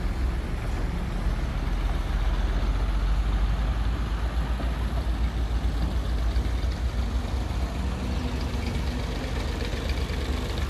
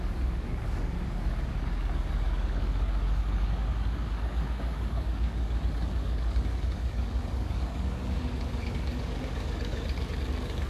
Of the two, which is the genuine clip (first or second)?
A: first